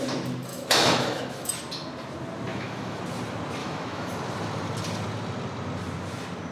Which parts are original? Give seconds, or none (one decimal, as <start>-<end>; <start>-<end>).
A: 0.0-0.5; 1.5-2.5; 3.0-3.6; 4.1-6.5